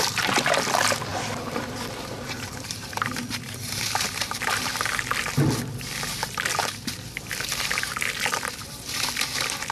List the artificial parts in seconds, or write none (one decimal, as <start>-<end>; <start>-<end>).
1.1-4.7